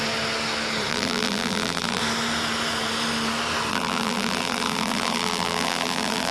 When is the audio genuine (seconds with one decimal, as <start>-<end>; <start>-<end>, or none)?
0.0-0.9; 2.0-3.7